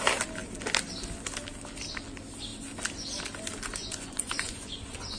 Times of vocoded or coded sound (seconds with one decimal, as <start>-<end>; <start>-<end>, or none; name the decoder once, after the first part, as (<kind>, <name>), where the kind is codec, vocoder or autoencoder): 3.8-5.2 (vocoder, Vocos)